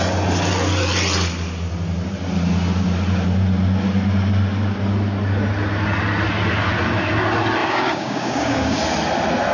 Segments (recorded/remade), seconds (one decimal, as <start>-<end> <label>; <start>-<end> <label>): 0.0-7.6 recorded; 7.6-8.8 remade; 8.8-9.5 recorded